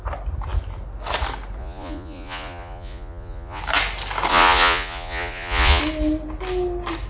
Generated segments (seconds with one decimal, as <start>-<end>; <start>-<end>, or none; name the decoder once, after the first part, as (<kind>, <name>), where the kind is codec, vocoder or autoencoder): 1.6-3.6 (vocoder, Vocos); 4.3-5.8